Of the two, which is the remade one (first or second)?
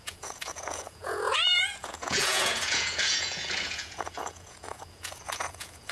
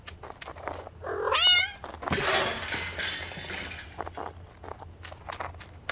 first